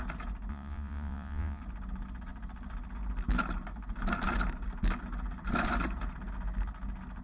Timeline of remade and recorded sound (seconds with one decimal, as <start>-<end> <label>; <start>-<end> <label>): 0.0-0.5 recorded; 0.5-1.6 remade; 1.6-7.2 recorded